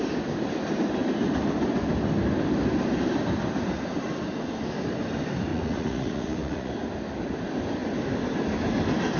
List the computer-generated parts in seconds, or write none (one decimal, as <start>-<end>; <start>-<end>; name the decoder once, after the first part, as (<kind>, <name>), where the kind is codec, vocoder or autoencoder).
5.5-6.7 (vocoder, Vocos)